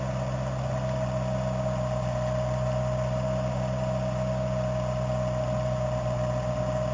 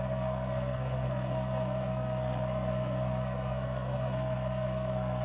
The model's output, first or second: second